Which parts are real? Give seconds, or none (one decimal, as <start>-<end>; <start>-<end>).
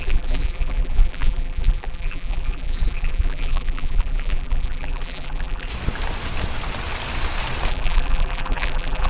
5.7-7.7